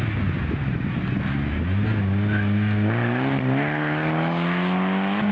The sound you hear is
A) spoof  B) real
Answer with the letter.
B